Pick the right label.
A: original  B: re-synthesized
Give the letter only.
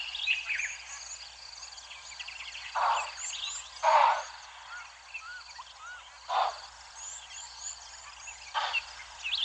A